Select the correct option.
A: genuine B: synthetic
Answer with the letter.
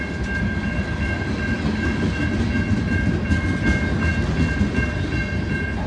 A